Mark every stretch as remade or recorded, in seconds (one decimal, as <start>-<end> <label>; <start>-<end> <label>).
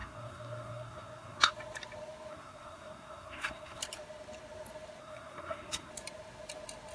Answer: 0.0-1.5 remade; 1.5-2.3 recorded; 2.3-3.8 remade; 3.8-5.0 recorded; 5.0-5.9 remade; 5.9-6.9 recorded